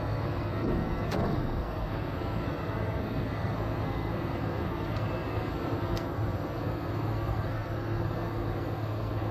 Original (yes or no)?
no